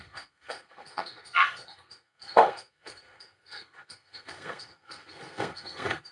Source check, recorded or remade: remade